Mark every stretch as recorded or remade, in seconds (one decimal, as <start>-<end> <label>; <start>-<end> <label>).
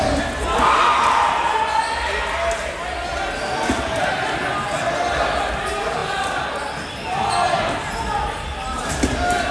0.0-9.5 recorded